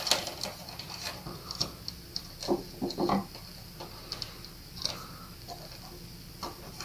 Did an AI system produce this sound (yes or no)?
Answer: no